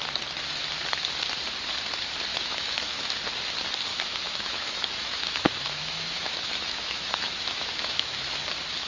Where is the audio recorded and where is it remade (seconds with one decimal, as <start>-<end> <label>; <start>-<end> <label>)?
0.0-2.3 recorded; 2.3-3.1 remade; 3.1-3.9 recorded; 3.9-8.4 remade; 8.4-8.9 recorded